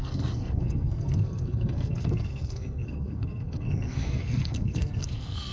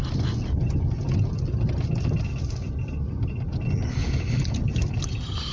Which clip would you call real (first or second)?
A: second